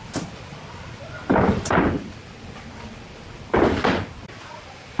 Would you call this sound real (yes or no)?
yes